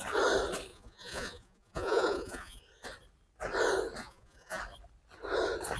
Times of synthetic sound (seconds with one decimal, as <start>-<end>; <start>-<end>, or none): 0.7-2.6; 4.0-4.6